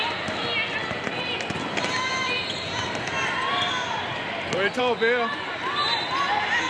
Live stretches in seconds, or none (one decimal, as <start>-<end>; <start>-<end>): 0.0-6.7